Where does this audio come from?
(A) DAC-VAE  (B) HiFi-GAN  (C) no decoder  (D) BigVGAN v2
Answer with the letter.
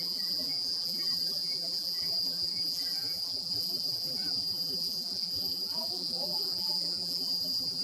D